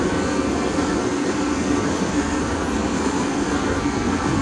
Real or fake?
fake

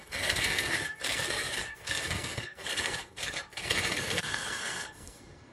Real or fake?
fake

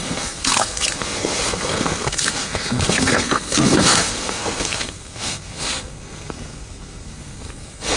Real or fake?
fake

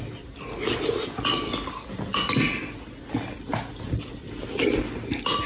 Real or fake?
real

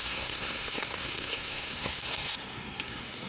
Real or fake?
fake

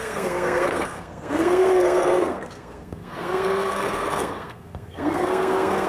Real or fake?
fake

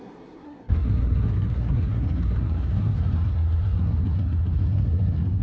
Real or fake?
fake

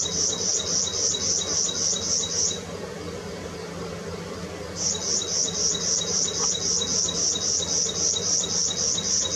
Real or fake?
real